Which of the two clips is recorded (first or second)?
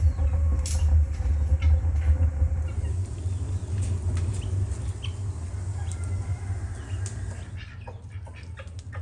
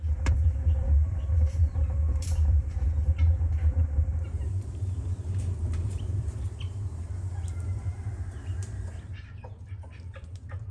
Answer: first